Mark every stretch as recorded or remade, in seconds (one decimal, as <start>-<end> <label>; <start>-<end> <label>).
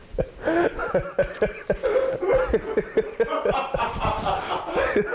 0.0-5.1 recorded